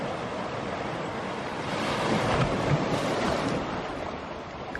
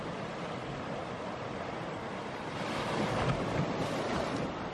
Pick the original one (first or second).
first